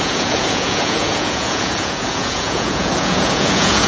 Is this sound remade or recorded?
remade